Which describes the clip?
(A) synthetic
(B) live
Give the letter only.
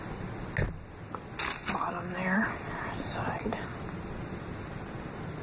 B